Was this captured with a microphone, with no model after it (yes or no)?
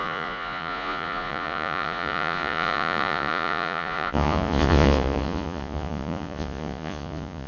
no